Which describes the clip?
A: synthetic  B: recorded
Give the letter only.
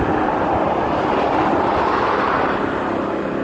B